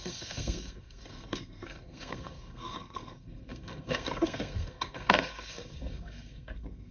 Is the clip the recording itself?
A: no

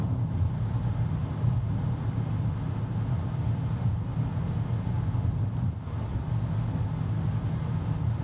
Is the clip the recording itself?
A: yes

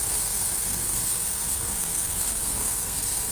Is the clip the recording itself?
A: no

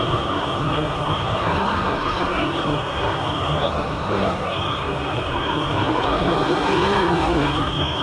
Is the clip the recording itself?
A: no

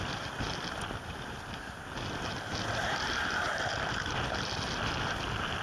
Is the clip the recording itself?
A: yes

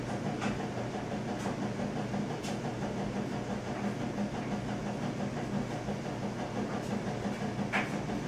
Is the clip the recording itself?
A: yes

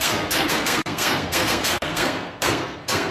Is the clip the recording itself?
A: no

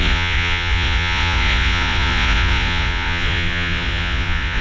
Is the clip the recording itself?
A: no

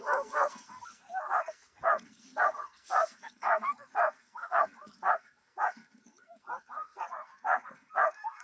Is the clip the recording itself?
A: no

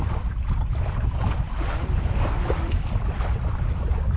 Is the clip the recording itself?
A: no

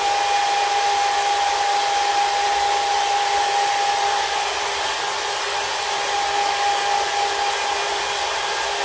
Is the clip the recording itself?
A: yes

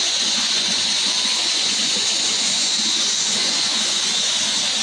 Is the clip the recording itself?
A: no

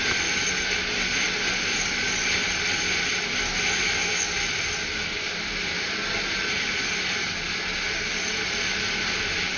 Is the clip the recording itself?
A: yes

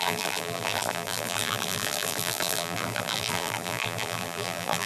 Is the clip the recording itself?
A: no